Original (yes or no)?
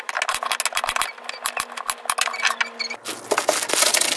yes